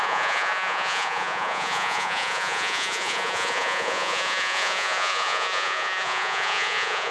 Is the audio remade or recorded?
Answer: remade